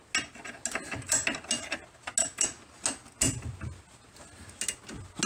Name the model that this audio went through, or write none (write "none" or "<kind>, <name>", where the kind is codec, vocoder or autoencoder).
none